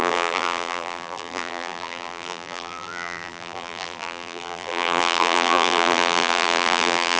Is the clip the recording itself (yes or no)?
no